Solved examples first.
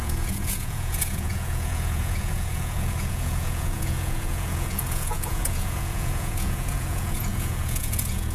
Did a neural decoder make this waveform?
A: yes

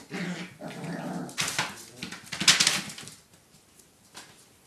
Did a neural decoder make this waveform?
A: no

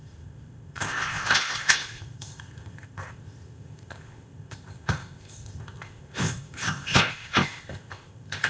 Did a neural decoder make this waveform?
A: yes